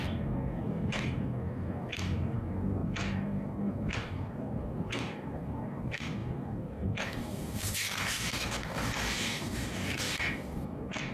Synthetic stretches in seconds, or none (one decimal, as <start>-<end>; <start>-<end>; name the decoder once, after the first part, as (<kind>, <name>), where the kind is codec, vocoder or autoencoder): 0.0-11.1 (codec, DAC)